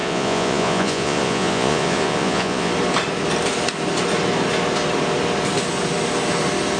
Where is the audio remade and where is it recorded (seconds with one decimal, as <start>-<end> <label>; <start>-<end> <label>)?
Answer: 0.0-2.7 remade; 2.7-6.8 recorded